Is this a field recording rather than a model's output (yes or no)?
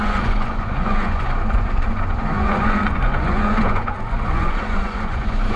no